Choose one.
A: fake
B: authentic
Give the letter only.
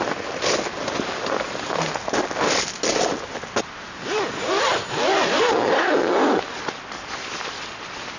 B